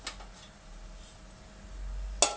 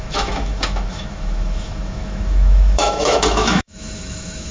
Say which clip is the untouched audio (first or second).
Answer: first